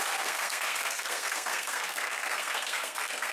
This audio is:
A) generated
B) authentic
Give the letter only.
A